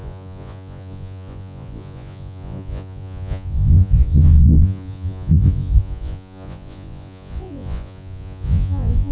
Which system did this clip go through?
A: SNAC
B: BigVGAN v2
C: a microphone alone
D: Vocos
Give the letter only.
D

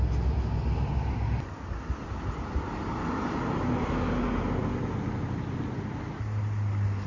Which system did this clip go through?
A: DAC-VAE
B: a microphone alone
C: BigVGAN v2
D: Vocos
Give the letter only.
B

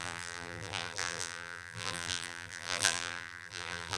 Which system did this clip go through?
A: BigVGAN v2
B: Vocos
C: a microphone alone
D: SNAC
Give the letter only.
A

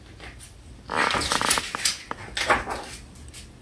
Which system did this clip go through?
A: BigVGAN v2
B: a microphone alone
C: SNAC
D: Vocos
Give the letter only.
B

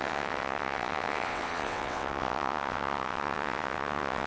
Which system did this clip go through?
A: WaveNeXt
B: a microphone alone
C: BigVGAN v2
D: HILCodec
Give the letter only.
A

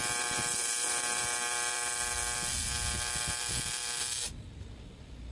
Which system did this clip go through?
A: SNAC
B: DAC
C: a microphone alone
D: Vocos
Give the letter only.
C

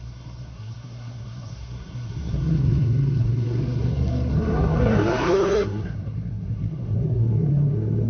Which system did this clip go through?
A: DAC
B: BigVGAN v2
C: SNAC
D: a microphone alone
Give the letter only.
C